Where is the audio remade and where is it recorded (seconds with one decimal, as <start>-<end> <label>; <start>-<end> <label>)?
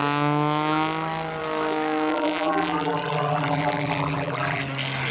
0.0-2.1 recorded; 2.1-4.6 remade; 4.6-5.1 recorded